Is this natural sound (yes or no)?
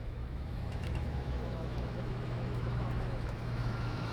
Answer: no